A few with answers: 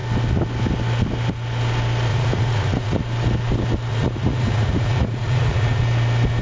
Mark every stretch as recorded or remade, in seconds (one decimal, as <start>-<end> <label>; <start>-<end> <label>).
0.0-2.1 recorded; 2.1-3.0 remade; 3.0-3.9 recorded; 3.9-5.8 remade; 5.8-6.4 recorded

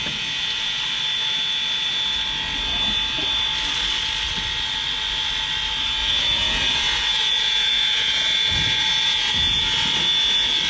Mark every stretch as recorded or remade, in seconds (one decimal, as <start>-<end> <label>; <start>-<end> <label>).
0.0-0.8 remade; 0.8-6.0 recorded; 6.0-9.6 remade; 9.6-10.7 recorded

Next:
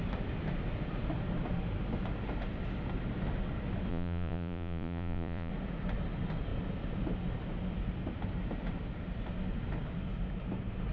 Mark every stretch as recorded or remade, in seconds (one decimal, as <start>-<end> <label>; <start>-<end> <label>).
0.0-3.9 recorded; 3.9-5.5 remade; 5.5-10.9 recorded